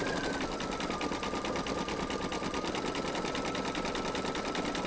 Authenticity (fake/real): fake